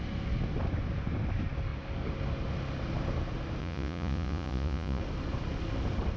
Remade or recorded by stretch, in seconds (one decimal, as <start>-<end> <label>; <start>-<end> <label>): 0.0-3.6 recorded; 3.6-5.0 remade; 5.0-6.2 recorded